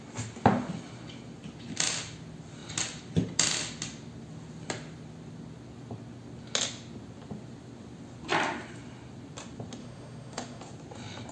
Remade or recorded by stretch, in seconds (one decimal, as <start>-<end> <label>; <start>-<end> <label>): 0.0-9.8 recorded; 9.8-10.6 remade; 10.6-11.3 recorded